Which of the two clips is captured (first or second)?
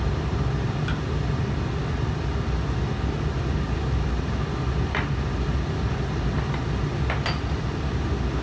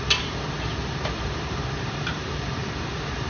first